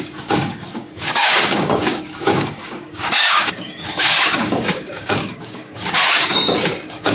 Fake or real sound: fake